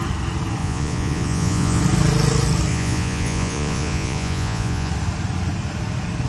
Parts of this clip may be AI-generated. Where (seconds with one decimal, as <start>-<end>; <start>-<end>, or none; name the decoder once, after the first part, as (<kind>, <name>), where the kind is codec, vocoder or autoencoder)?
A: 0.6-1.8 (vocoder, Vocos); 2.7-4.9